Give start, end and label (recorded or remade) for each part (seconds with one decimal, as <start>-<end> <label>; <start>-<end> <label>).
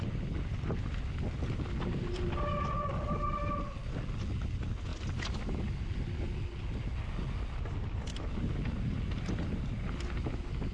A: 0.0-10.7 recorded